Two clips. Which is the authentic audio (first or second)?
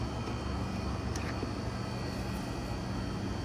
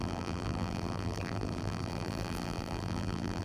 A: first